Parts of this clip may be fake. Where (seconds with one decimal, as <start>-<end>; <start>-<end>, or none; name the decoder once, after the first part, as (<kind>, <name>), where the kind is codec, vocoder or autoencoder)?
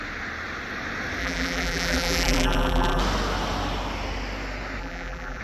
1.2-3.0 (vocoder, BigVGAN v2); 4.8-5.4